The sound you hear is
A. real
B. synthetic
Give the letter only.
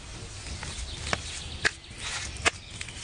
A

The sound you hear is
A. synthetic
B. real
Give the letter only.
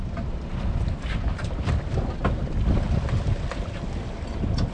B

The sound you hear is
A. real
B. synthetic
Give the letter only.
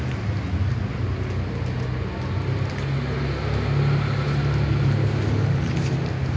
A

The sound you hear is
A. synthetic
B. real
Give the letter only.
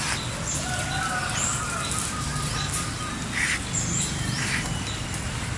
B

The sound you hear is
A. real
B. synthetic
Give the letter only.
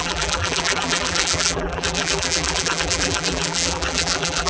B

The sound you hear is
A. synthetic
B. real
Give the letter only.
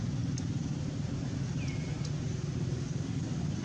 B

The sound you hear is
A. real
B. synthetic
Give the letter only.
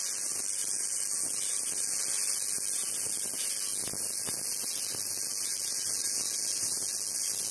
A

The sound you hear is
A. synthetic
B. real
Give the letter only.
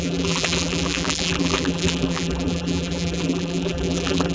A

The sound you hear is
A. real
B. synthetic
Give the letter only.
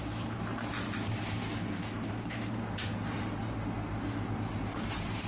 B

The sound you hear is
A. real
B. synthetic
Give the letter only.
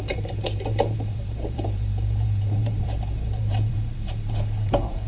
B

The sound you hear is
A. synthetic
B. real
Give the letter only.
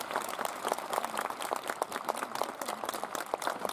B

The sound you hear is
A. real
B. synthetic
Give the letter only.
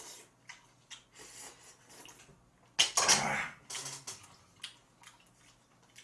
A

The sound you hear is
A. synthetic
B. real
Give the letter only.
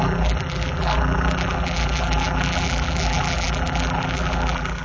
A